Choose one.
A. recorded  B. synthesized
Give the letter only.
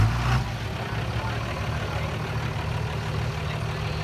A